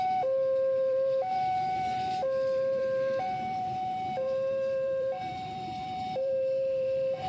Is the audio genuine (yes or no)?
no